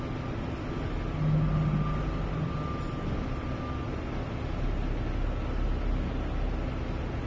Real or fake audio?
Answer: real